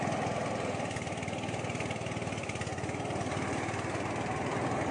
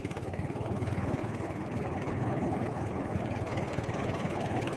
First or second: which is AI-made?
second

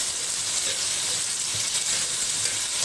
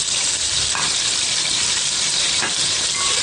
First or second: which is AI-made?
second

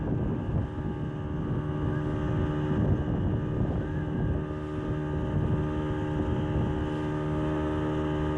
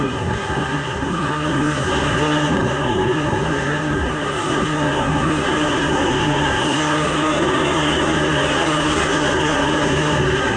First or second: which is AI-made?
second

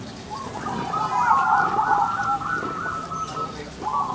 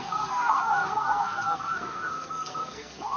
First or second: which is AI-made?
second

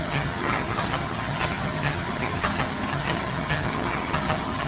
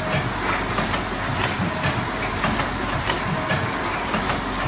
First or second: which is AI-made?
first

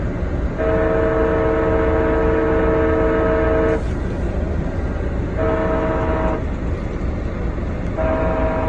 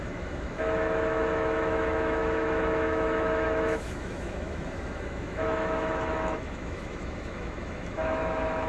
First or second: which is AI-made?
second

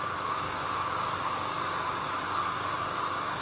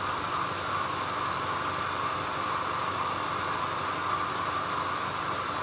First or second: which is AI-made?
first